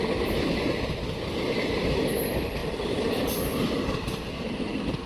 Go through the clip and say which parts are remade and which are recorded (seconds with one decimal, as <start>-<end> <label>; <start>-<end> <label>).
0.0-5.1 recorded